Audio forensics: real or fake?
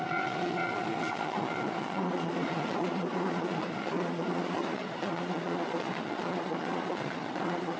fake